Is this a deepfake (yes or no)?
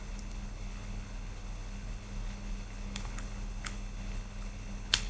yes